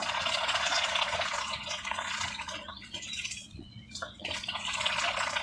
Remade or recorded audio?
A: remade